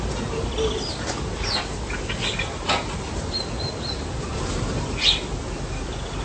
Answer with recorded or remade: recorded